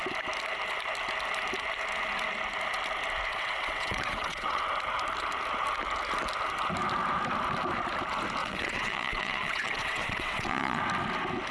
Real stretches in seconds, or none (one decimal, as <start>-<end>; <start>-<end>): 0.0-3.3; 4.6-8.4; 10.8-11.5